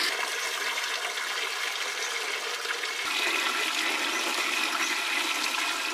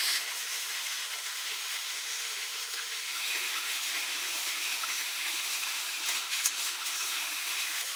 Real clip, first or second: first